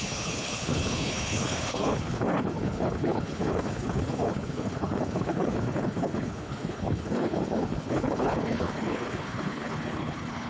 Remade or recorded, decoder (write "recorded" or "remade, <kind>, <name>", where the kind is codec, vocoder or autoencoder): remade, codec, HILCodec